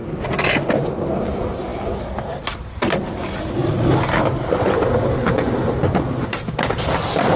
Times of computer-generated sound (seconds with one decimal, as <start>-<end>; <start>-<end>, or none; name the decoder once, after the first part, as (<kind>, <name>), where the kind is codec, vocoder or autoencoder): none